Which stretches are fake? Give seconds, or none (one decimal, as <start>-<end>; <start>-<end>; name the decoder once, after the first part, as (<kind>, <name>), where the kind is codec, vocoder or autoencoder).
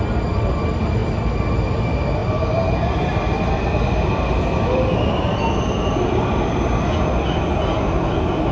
none